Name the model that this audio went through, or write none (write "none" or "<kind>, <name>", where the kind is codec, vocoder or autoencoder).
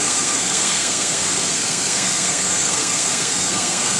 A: codec, SNAC